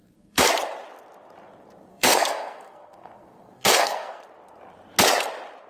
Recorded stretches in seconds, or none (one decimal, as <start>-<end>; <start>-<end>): 0.5-1.9; 4.2-5.7